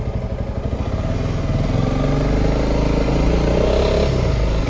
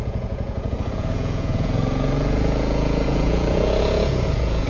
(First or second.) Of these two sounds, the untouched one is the first